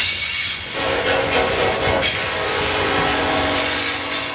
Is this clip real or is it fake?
fake